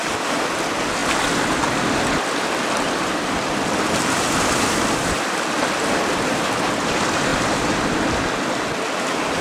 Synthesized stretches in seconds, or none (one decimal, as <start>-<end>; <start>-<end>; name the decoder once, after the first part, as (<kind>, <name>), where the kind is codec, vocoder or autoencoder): 1.0-6.2 (vocoder, BigVGAN v2); 7.3-7.8